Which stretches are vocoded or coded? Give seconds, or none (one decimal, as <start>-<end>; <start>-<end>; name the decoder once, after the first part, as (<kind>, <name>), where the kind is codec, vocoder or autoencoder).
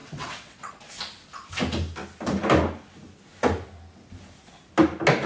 0.0-0.7 (vocoder, WaveNeXt)